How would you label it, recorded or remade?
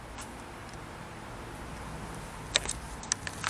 recorded